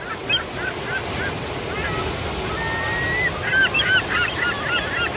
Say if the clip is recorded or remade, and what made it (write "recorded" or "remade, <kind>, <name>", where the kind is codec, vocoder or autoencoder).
recorded